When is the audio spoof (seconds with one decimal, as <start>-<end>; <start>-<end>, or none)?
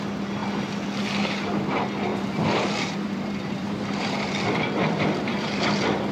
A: 2.1-6.1